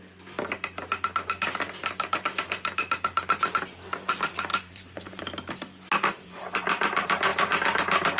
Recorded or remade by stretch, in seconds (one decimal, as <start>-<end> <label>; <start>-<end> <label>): 0.0-4.5 recorded; 4.5-5.2 remade; 5.2-8.2 recorded